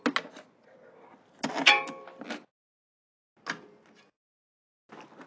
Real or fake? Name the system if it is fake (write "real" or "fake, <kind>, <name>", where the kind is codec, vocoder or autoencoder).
real